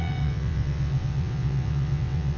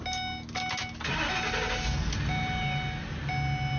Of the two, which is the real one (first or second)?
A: second